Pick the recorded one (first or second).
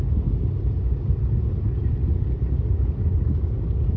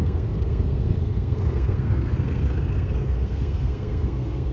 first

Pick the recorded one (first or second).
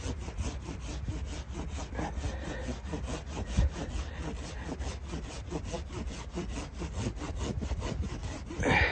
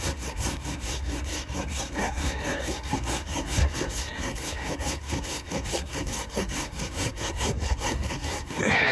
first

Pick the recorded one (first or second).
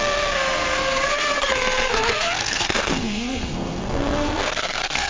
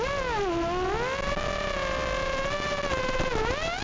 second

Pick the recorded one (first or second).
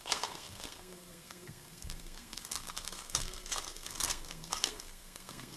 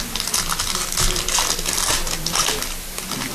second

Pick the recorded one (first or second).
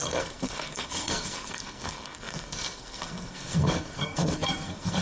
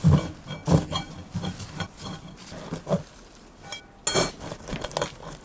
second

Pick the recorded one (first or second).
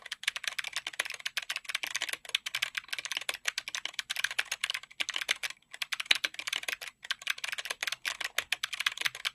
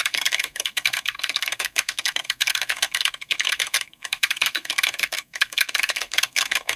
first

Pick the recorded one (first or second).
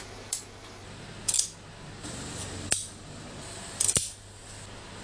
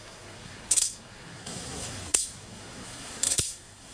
first